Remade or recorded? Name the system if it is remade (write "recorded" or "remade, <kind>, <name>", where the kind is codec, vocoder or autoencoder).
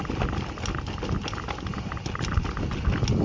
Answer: recorded